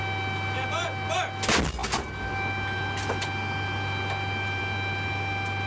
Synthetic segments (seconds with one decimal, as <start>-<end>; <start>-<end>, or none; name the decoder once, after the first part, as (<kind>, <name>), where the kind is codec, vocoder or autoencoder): none